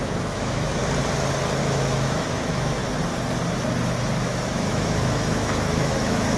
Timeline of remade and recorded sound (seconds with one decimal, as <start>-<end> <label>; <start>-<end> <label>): 0.0-0.8 remade; 0.8-1.6 recorded; 1.6-2.8 remade; 2.8-4.2 recorded; 4.2-6.4 remade